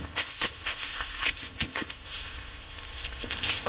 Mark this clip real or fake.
fake